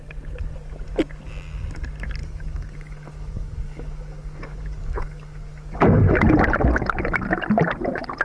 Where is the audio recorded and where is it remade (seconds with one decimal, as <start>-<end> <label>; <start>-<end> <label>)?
0.0-2.2 recorded; 2.2-5.8 remade; 5.8-8.2 recorded